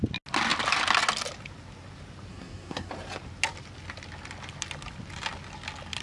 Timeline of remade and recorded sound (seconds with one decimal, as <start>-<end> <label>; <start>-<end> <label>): 0.0-2.3 recorded; 2.3-2.9 remade; 2.9-6.0 recorded